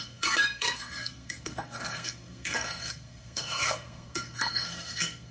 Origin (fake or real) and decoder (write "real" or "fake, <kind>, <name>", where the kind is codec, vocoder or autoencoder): fake, codec, SNAC